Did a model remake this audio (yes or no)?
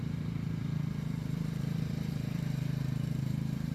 yes